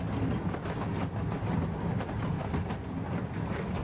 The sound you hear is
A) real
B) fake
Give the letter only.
A